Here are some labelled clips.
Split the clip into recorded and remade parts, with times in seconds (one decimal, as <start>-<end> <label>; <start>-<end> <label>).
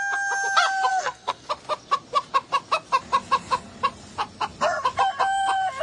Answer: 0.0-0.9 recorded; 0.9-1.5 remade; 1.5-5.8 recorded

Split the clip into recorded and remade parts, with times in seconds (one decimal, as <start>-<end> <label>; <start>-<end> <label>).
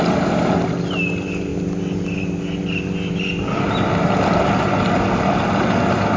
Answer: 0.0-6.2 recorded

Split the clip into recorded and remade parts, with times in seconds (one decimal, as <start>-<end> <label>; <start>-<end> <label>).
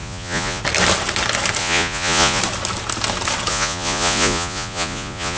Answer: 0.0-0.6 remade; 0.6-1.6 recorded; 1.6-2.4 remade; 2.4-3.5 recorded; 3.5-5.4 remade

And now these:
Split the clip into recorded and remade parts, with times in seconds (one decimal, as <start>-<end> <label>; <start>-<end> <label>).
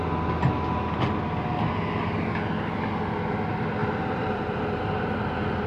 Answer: 0.0-3.8 recorded; 3.8-5.2 remade; 5.2-5.7 recorded